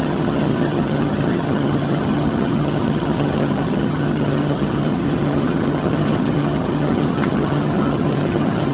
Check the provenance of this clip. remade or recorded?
remade